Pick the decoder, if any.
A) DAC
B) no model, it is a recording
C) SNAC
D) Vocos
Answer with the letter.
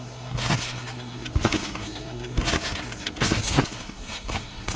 C